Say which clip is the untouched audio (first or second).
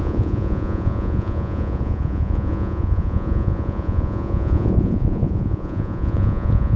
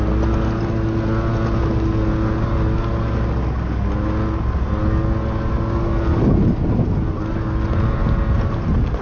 second